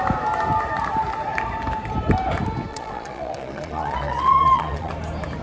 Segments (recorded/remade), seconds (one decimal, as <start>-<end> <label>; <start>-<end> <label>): 0.0-2.7 recorded; 2.7-4.9 remade; 4.9-5.4 recorded